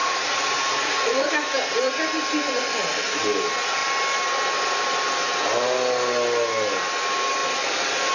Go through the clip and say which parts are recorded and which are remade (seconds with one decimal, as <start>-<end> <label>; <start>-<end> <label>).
0.0-1.3 remade; 1.3-8.1 recorded